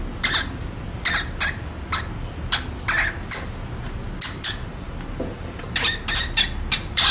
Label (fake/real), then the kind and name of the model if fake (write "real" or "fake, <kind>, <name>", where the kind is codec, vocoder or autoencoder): real